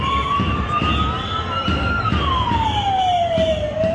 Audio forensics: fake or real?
fake